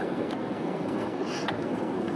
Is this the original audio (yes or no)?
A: no